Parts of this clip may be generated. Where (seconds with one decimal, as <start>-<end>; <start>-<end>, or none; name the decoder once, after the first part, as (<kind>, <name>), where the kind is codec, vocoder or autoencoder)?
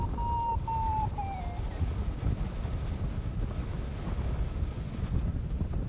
none